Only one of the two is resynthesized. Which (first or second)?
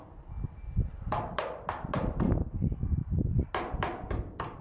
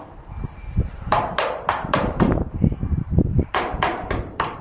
second